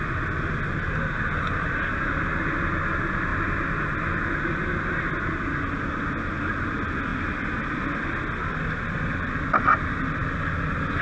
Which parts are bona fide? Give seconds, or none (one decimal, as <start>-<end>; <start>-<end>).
0.0-3.3; 3.9-7.1; 7.8-11.0